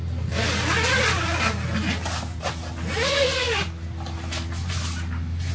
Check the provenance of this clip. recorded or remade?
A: recorded